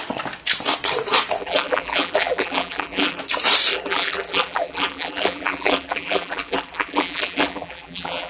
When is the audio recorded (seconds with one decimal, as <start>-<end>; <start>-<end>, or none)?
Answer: 0.0-1.4; 3.2-3.7